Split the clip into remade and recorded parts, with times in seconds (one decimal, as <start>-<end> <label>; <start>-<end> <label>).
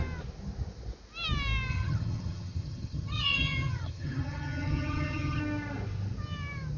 0.0-1.7 recorded; 1.7-5.4 remade; 5.4-6.8 recorded